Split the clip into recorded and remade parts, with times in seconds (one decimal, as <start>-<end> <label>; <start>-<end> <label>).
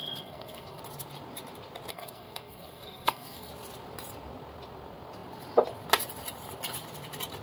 0.0-0.8 remade; 0.8-1.9 recorded; 1.9-3.5 remade; 3.5-7.4 recorded